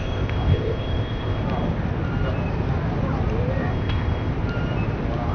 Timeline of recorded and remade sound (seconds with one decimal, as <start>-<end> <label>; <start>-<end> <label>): 0.0-1.4 remade; 1.4-3.7 recorded; 3.7-4.3 remade; 4.3-5.3 recorded